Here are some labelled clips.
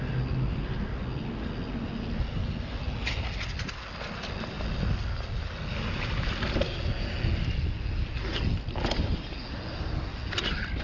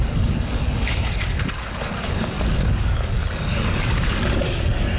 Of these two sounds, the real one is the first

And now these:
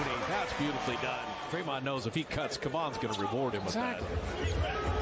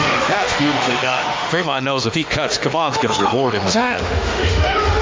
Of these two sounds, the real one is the first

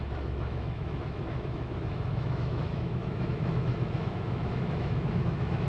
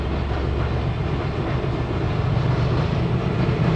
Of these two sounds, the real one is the second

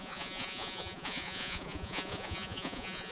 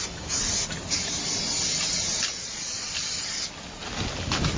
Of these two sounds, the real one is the second